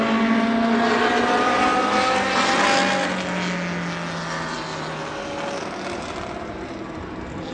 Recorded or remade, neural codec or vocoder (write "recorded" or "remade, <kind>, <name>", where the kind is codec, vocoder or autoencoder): recorded